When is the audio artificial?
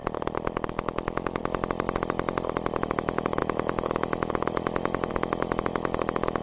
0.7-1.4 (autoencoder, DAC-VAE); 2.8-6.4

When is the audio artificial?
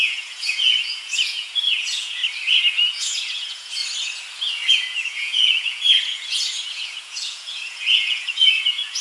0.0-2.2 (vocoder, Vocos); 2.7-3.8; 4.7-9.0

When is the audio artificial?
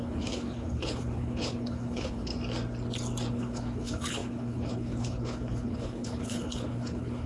0.0-2.3 (codec, HILCodec); 3.3-7.3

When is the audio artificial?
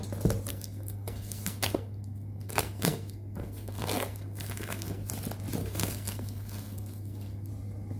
0.5-5.1 (codec, SNAC); 5.6-7.5